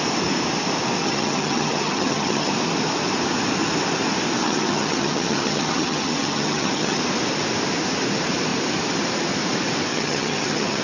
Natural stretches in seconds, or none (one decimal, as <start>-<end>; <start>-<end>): 0.0-1.0; 2.5-4.4; 7.0-9.9